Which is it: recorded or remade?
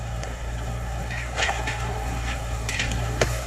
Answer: remade